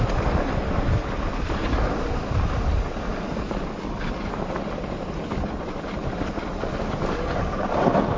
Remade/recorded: recorded